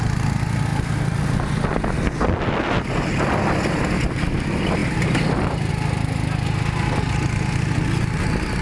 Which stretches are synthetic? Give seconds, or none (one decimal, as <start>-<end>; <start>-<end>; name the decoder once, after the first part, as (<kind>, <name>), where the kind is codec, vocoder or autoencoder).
none